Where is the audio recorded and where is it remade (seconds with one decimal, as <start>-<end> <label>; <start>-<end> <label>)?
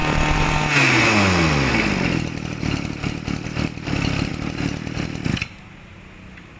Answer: 0.0-1.7 recorded; 1.7-4.3 remade; 4.3-6.0 recorded; 6.0-6.6 remade